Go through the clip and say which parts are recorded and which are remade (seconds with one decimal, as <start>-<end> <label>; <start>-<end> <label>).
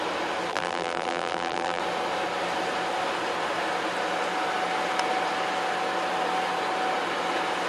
0.0-0.5 recorded; 0.5-1.8 remade; 1.8-7.7 recorded